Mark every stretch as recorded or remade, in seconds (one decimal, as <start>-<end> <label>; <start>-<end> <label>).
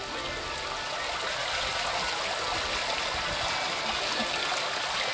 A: 0.0-5.1 recorded